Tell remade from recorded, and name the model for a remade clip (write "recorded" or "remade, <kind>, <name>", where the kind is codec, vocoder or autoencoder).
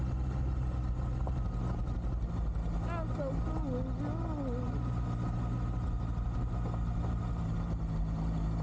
recorded